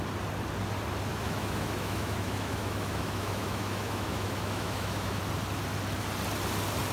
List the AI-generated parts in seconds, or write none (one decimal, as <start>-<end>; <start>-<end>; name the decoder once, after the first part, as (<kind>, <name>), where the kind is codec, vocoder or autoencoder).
1.1-5.2 (autoencoder, DAC-VAE)